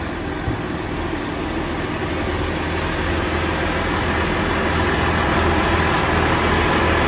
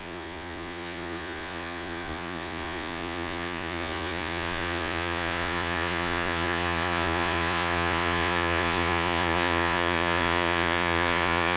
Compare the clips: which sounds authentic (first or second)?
first